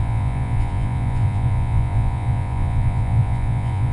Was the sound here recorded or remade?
remade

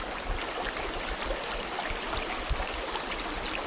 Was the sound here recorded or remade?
recorded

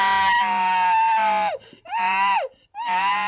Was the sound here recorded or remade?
recorded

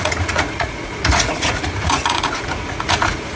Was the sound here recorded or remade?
remade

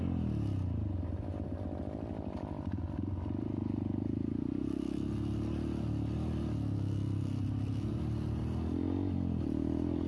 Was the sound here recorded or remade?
recorded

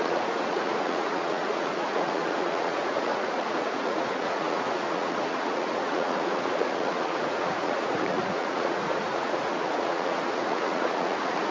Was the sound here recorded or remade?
remade